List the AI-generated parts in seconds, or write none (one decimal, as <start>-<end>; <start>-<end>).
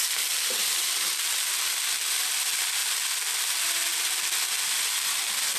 none